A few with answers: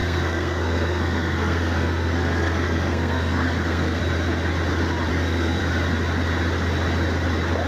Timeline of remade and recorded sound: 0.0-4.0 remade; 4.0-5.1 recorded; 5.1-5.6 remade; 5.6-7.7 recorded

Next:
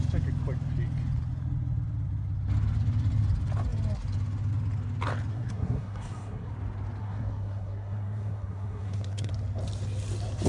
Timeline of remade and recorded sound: 0.0-5.3 recorded; 5.3-6.5 remade; 6.5-7.0 recorded; 7.0-9.3 remade; 9.3-10.5 recorded